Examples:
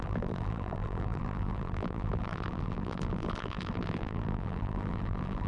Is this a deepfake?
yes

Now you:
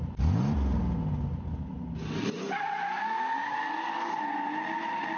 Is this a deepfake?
no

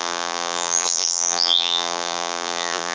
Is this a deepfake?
yes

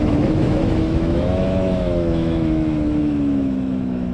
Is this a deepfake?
yes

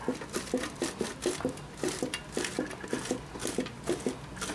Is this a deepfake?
no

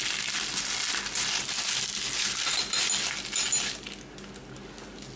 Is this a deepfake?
no